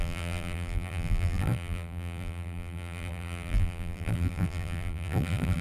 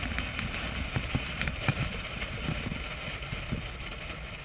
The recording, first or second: second